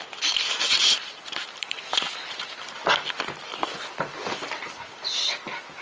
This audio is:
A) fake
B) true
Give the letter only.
B